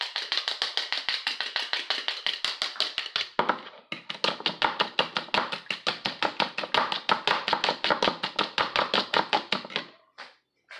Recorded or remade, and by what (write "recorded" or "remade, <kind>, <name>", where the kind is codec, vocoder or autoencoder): recorded